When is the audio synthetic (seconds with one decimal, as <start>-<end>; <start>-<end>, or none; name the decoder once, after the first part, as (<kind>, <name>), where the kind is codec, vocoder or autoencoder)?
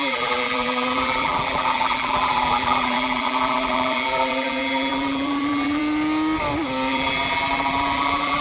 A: 0.0-5.8 (vocoder, BigVGAN v2); 6.9-8.4